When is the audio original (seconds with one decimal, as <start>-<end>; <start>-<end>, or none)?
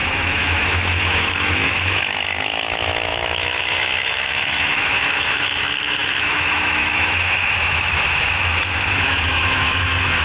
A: none